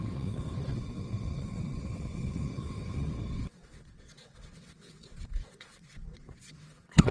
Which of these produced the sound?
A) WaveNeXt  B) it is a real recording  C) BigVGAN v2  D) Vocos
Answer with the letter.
A